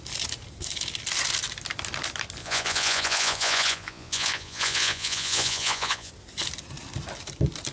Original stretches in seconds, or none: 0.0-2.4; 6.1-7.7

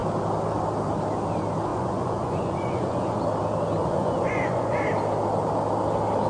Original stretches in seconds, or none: 0.0-1.7; 3.2-3.8; 4.8-6.3

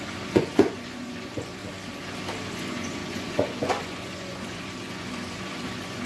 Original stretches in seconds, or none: 1.6-2.5